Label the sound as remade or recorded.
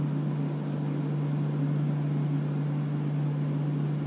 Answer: recorded